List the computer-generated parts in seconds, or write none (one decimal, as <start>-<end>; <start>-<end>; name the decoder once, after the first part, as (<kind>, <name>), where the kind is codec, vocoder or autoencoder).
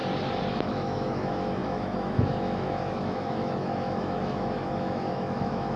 0.5-5.8 (autoencoder, DAC-VAE)